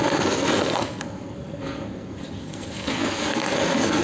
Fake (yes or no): yes